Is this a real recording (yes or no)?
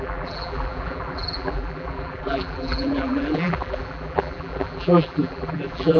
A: no